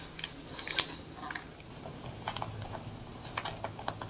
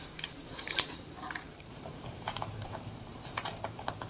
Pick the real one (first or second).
first